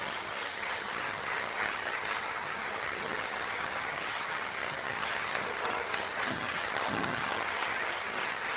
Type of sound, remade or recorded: remade